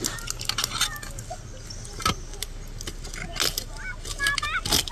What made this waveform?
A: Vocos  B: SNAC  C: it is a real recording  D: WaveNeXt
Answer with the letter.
C